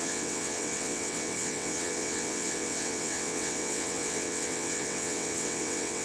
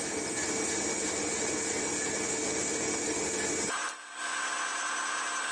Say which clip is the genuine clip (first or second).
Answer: second